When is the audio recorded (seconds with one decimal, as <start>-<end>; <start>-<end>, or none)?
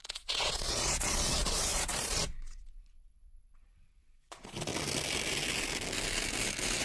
4.7-6.8